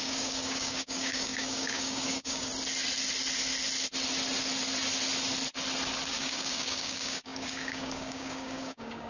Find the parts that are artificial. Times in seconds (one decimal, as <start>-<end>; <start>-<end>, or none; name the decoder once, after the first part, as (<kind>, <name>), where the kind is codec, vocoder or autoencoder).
0.0-2.5 (codec, DAC); 6.1-9.1